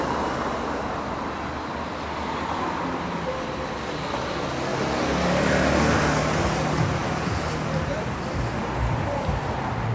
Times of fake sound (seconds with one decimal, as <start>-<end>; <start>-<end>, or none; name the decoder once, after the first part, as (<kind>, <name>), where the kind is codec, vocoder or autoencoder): none